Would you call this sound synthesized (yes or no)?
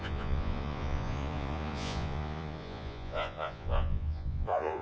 yes